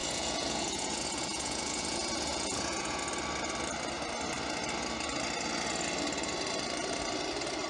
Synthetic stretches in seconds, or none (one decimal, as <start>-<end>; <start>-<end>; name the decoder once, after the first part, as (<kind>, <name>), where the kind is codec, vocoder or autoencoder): 0.0-3.0 (vocoder, Vocos)